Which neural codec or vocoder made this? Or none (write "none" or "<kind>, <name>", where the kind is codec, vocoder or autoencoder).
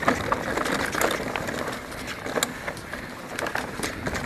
none